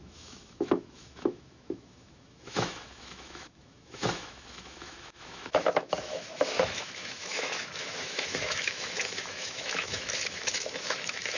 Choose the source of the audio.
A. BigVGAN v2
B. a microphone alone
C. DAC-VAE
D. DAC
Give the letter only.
C